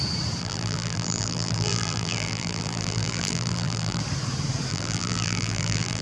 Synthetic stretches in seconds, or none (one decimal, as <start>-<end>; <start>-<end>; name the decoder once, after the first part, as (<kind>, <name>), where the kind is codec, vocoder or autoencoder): 0.4-4.0 (vocoder, BigVGAN v2); 4.7-6.0